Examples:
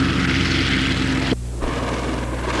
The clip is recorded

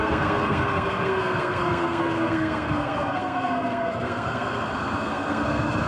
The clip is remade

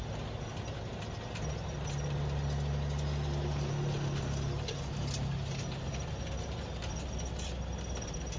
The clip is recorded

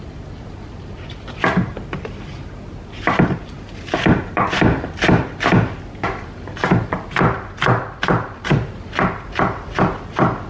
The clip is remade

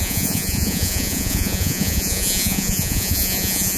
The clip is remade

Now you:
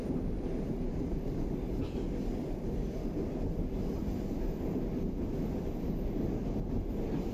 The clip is recorded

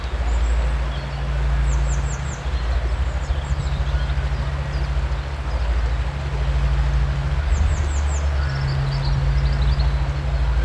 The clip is recorded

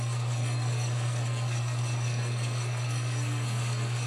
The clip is remade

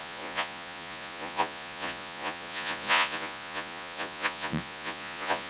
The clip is remade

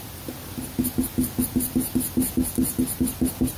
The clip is recorded